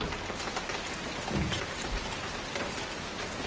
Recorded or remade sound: recorded